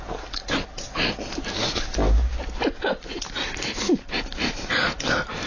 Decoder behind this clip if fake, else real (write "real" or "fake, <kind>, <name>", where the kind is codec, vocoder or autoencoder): real